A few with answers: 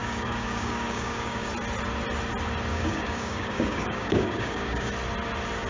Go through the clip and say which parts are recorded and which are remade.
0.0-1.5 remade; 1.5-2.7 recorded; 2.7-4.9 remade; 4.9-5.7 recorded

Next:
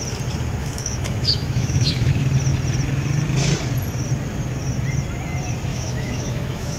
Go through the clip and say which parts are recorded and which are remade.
0.0-0.6 recorded; 0.6-2.1 remade; 2.1-5.7 recorded; 5.7-6.8 remade

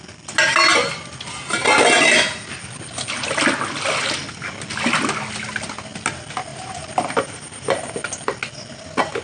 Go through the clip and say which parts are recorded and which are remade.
0.0-6.5 recorded; 6.5-7.9 remade; 7.9-9.2 recorded